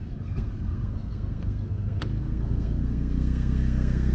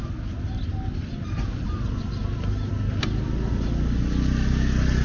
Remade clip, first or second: first